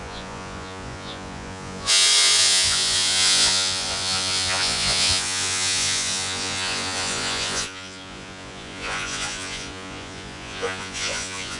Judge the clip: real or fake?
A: fake